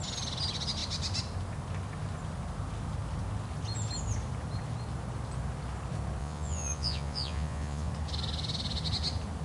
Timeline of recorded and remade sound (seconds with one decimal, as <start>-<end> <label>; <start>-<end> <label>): 0.0-6.2 recorded; 6.2-7.9 remade; 7.9-9.4 recorded